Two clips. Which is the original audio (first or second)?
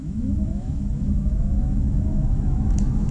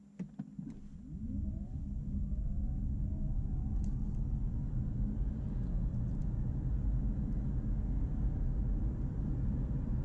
second